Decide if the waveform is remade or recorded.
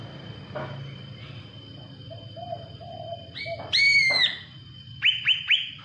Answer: recorded